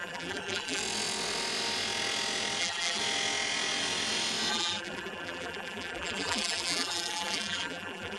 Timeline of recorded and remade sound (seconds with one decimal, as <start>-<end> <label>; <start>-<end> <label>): 0.0-0.8 remade; 0.8-2.6 recorded; 2.6-3.0 remade; 3.0-4.5 recorded; 4.5-8.2 remade